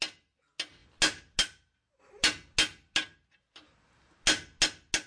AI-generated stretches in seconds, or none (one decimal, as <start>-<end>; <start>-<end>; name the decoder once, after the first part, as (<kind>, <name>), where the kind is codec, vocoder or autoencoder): none